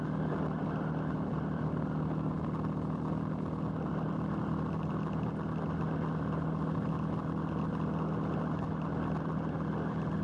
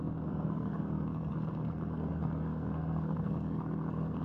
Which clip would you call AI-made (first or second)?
second